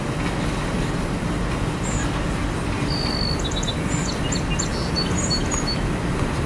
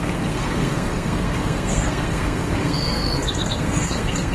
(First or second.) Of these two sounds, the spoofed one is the second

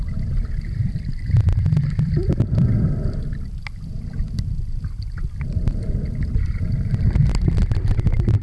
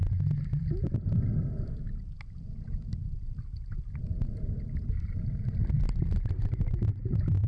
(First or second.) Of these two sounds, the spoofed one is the first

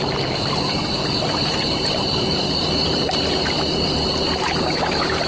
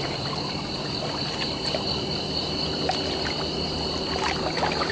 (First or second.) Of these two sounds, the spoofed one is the first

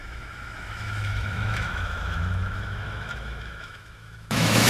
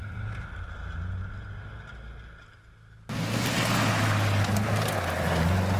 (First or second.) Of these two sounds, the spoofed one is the first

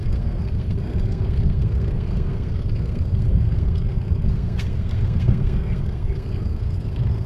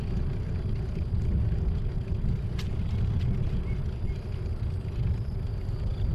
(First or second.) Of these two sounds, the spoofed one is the first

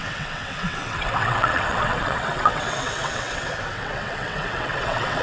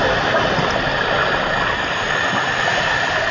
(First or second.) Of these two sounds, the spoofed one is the first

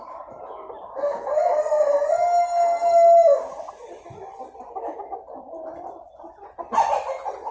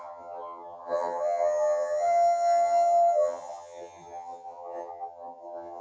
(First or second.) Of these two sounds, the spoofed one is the second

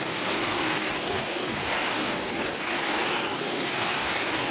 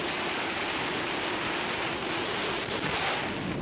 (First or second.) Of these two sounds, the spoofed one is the first